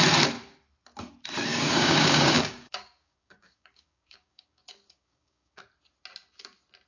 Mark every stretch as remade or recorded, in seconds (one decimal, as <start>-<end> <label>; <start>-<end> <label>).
0.0-1.5 recorded; 1.5-5.6 remade; 5.6-6.9 recorded